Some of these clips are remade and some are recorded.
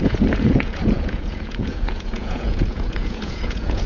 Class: remade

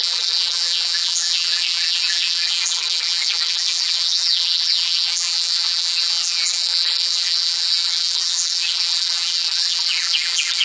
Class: remade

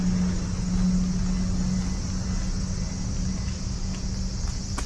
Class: recorded